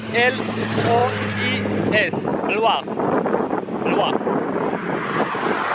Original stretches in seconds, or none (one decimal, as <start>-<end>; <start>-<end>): 0.0-5.7